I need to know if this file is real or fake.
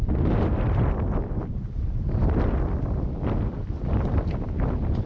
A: real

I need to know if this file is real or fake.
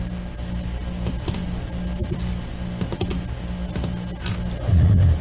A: real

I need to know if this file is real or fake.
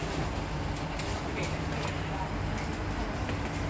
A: real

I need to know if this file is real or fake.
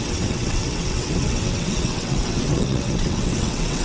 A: fake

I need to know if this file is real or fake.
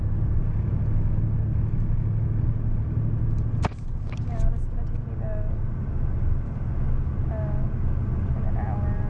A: real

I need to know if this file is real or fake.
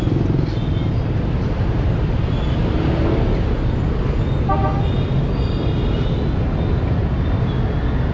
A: real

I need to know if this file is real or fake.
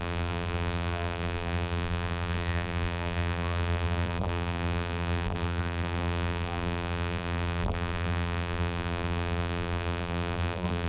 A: fake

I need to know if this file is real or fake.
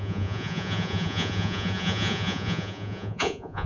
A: fake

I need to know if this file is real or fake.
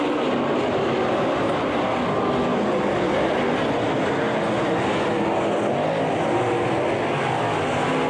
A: real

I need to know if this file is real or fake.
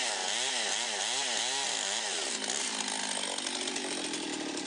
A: real